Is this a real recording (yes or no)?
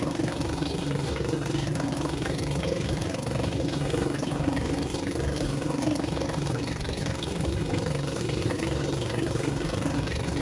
no